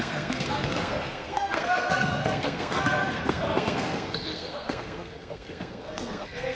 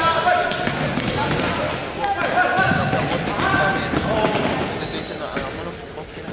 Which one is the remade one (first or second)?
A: first